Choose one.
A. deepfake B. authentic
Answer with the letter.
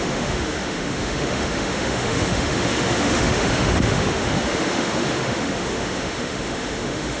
A